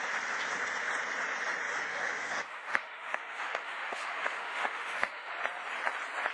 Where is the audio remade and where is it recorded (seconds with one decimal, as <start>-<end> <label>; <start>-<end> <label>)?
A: 0.0-1.7 recorded; 1.7-5.3 remade; 5.3-6.3 recorded